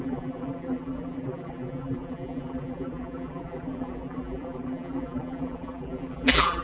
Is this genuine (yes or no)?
no